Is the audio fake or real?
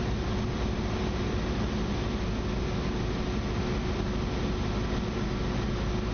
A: real